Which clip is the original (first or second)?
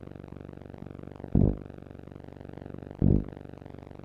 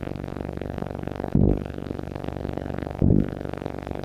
first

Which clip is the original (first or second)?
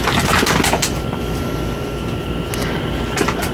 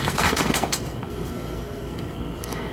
first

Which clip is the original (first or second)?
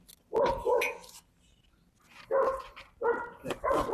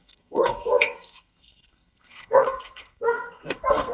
first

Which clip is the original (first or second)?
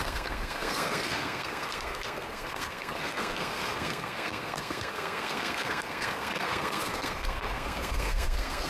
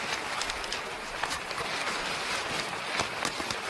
second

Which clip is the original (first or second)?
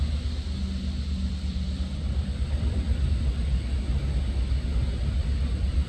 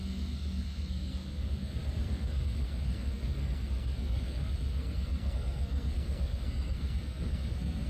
first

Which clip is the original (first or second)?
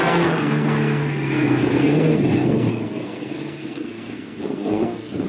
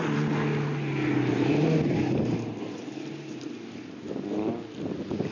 second